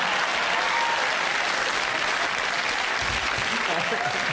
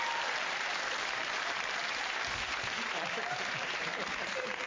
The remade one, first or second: second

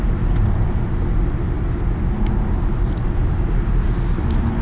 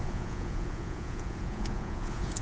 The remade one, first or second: second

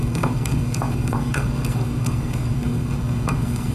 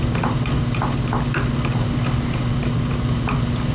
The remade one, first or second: first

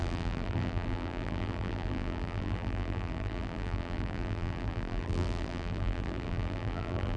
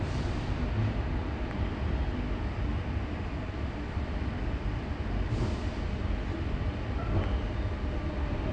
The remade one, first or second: first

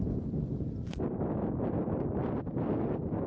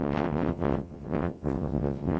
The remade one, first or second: second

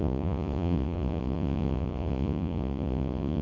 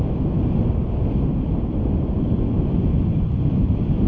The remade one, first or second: first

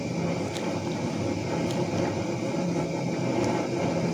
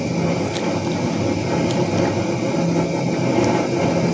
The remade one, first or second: first